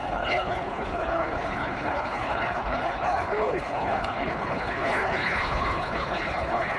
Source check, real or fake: fake